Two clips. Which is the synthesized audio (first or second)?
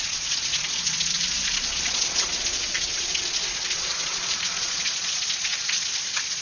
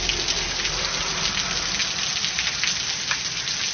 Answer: first